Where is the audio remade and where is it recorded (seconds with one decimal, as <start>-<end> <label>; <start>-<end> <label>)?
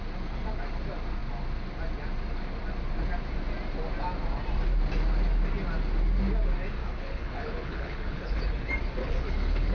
0.0-6.8 recorded; 6.8-8.4 remade; 8.4-9.0 recorded; 9.0-9.7 remade